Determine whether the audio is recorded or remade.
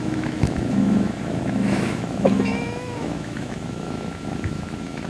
remade